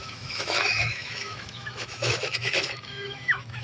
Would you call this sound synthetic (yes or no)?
yes